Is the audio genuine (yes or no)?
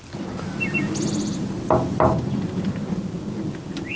yes